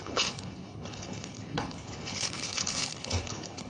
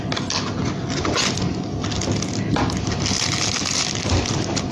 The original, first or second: second